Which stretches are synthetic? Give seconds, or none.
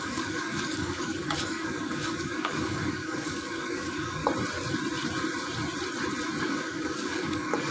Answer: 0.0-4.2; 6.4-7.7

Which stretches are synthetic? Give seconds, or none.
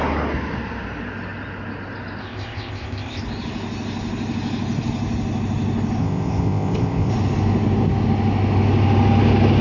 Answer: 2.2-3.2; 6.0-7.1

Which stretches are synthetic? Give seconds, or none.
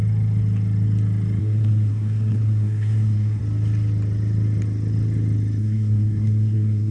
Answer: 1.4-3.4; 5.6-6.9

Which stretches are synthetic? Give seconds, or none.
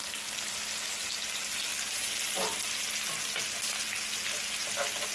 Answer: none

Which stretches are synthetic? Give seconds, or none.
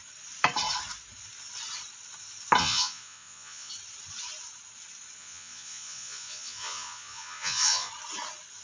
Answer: 2.6-3.7; 5.2-7.9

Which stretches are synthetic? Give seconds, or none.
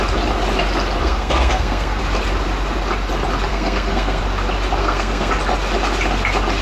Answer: 1.0-2.0; 3.5-4.2; 4.8-5.3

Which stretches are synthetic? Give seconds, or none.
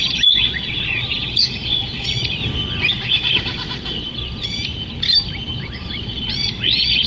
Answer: 0.0-2.4; 2.9-4.6; 5.6-7.1